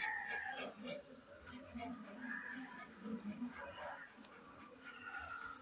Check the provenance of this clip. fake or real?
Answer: fake